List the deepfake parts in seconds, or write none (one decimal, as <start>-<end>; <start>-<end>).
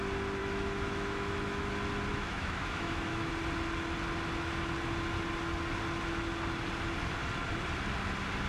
0.4-1.7; 2.1-3.3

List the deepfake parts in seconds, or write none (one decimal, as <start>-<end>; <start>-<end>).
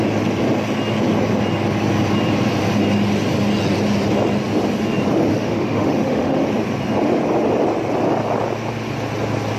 5.3-6.4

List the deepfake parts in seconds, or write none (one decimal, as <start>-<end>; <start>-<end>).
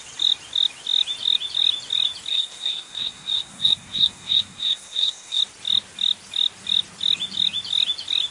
2.3-5.4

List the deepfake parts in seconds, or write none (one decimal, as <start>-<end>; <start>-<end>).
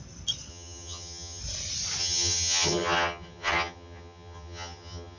0.5-1.4; 2.0-5.2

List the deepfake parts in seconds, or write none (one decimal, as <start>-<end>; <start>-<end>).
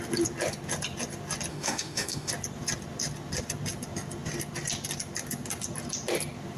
1.5-2.3